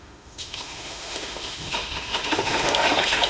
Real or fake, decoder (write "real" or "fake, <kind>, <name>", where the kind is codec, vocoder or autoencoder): fake, autoencoder, DAC-VAE